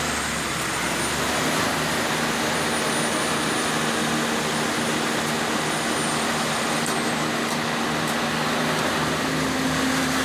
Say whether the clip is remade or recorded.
recorded